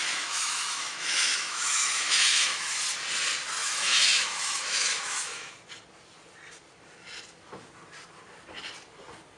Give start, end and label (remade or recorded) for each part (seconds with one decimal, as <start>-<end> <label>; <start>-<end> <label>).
0.0-2.8 remade; 2.8-3.6 recorded; 3.6-5.5 remade; 5.5-9.4 recorded